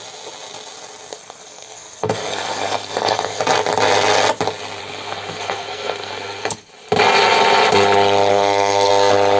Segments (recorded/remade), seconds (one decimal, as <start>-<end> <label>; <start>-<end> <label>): 0.0-1.1 recorded; 1.1-3.4 remade; 3.4-4.8 recorded; 4.8-6.7 remade; 6.7-8.3 recorded; 8.3-8.9 remade; 8.9-9.4 recorded

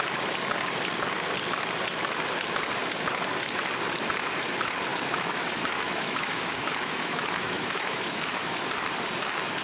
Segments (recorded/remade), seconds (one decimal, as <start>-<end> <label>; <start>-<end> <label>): 0.0-4.9 recorded; 4.9-8.6 remade; 8.6-9.6 recorded